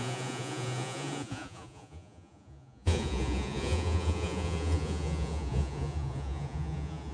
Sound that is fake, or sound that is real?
fake